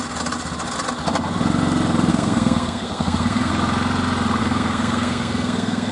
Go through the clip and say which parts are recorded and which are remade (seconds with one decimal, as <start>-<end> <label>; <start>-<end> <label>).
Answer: 0.0-2.1 recorded; 2.1-3.5 remade; 3.5-4.4 recorded; 4.4-5.9 remade